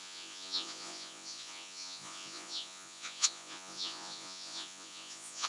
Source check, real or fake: fake